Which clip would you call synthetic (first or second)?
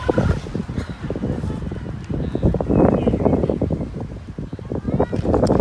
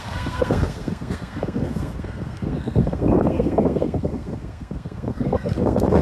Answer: second